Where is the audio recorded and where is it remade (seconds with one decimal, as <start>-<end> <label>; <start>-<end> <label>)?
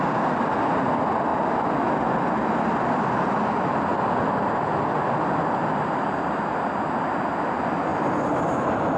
0.0-9.0 recorded